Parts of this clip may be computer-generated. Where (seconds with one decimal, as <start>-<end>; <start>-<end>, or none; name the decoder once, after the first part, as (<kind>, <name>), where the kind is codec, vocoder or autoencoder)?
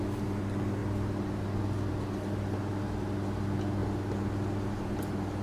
none